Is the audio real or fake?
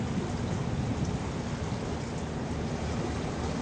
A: real